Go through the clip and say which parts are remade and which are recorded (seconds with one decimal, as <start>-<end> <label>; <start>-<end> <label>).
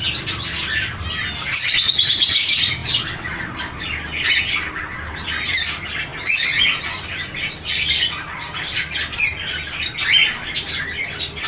0.0-1.5 recorded; 1.5-2.3 remade; 2.3-11.5 recorded